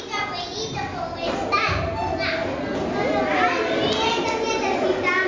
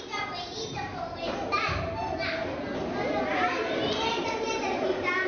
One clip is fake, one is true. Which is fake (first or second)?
second